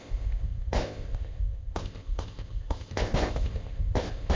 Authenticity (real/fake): fake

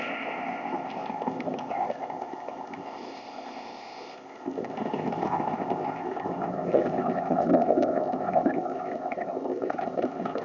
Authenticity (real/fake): fake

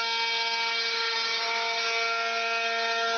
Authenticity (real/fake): real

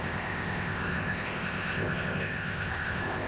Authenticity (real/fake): fake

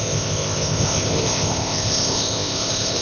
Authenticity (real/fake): fake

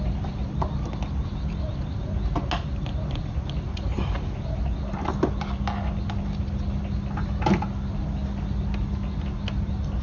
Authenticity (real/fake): real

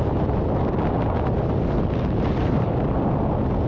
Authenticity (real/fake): real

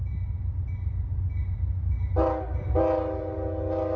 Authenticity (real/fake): real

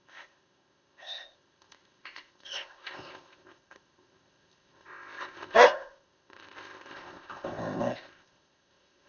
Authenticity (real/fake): fake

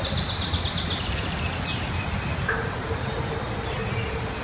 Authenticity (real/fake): real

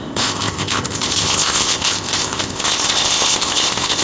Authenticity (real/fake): fake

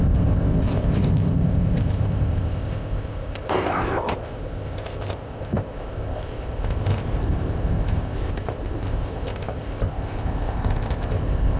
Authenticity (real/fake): fake